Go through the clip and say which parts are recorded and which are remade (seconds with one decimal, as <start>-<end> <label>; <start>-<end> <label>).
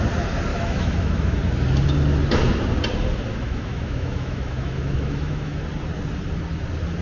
0.0-0.5 recorded; 0.5-1.4 remade; 1.4-3.3 recorded; 3.3-5.6 remade; 5.6-7.0 recorded